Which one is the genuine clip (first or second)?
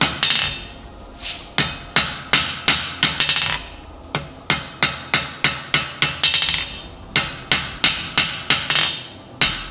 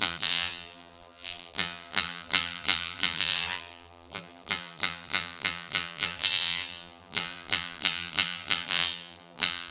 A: first